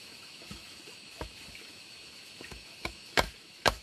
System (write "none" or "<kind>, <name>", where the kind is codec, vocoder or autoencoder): autoencoder, DAC-VAE